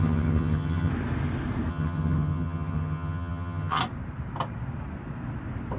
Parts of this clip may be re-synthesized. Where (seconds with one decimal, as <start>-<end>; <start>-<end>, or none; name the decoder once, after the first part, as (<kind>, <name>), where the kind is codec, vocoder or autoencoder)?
0.0-0.9 (vocoder, HiFi-GAN); 1.7-3.8